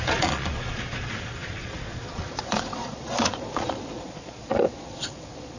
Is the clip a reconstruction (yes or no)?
yes